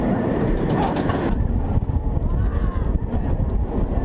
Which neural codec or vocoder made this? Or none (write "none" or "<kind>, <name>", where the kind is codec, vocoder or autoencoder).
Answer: none